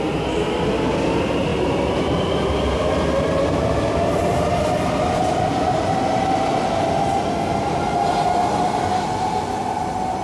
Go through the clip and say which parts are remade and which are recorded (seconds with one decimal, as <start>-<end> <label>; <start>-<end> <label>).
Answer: 0.0-10.2 recorded